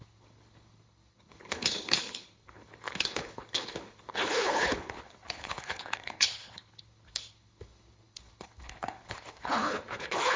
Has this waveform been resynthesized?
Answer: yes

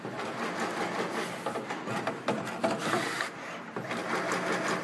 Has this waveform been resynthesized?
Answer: no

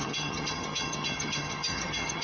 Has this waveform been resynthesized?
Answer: yes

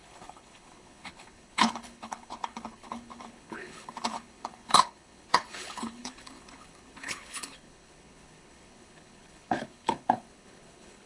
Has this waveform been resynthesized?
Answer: yes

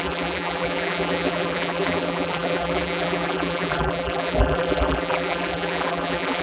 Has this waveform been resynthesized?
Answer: yes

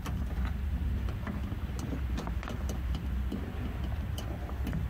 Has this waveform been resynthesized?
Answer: no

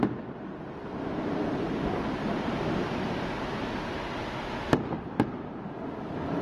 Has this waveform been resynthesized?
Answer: no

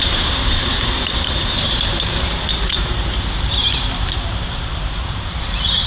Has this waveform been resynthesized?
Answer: yes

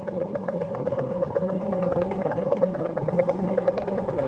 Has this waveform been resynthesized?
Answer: yes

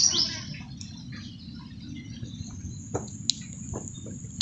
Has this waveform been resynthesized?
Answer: no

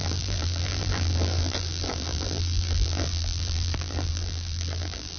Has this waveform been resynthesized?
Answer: yes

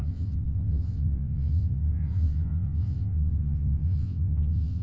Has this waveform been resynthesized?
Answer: yes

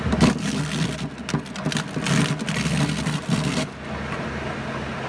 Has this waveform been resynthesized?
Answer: no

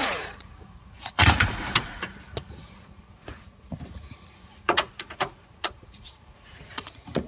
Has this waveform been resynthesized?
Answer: yes